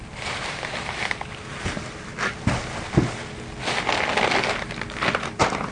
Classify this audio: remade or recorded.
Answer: recorded